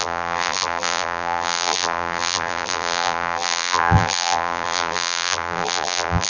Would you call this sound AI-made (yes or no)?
yes